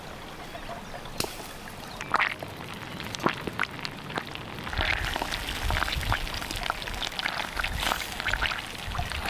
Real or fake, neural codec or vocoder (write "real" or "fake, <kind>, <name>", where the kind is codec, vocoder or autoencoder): real